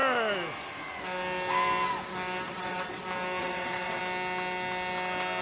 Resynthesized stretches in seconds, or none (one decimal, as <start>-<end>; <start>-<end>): 2.5-3.0; 3.4-4.0